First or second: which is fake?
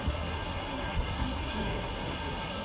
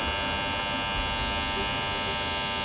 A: first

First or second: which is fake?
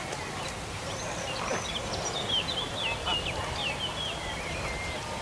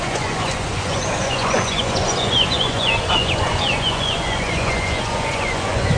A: second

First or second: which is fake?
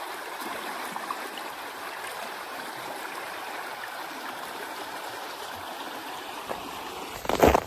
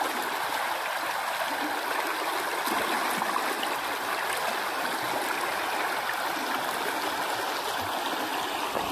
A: first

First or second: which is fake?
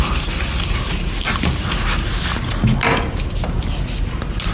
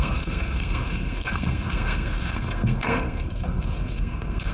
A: second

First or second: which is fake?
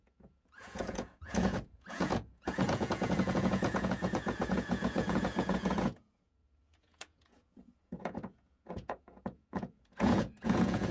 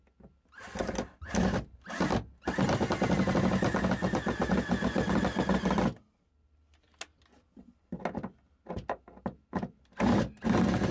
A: first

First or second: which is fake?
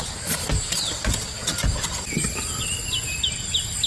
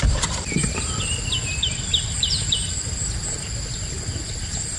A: second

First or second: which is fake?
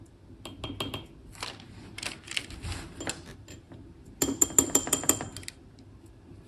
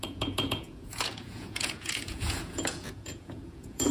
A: second